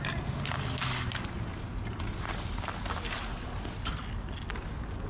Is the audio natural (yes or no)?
yes